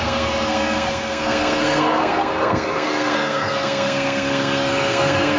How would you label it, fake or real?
fake